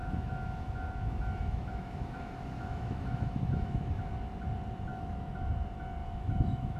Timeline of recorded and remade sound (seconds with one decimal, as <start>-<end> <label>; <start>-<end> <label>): 0.0-4.1 remade; 4.1-4.9 recorded; 4.9-5.5 remade; 5.5-6.0 recorded; 6.0-6.8 remade